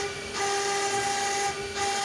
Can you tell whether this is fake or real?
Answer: real